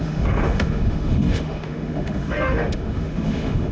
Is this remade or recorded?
remade